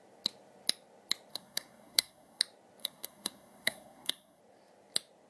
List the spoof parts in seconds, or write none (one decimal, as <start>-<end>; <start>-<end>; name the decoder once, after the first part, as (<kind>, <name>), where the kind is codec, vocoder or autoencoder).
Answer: 1.3-2.4 (codec, SNAC); 2.8-4.4